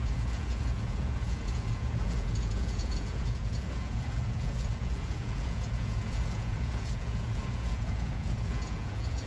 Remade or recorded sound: remade